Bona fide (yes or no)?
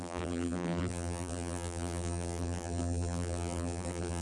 no